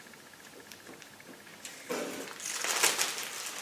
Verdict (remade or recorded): recorded